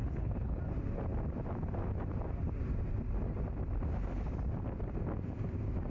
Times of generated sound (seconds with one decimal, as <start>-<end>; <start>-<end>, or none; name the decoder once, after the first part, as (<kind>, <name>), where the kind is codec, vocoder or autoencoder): 0.0-0.6 (codec, HILCodec)